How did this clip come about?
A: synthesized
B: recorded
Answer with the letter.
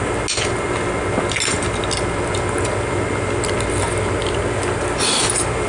B